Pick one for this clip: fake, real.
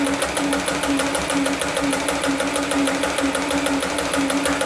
real